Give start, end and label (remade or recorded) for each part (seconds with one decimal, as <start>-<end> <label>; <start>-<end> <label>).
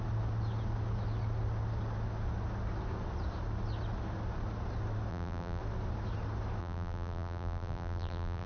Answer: 0.0-5.1 recorded; 5.1-5.6 remade; 5.6-6.6 recorded; 6.6-8.5 remade